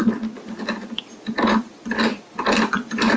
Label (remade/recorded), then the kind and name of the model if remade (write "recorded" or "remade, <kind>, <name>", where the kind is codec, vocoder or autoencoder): recorded